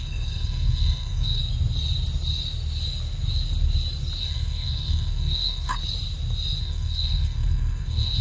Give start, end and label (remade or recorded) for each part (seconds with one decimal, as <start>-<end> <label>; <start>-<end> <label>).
0.0-1.4 remade; 1.4-4.2 recorded; 4.2-5.8 remade; 5.8-6.6 recorded; 6.6-8.2 remade